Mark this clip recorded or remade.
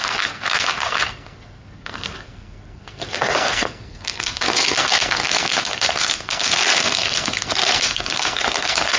remade